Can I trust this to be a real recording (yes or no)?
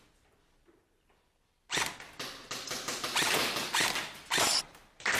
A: yes